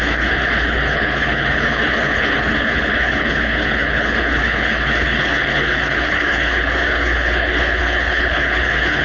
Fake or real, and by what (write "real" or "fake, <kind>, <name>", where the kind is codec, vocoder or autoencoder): fake, codec, HILCodec